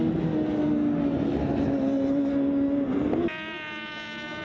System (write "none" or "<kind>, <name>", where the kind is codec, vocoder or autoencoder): none